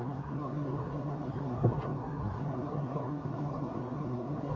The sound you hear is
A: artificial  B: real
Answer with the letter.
A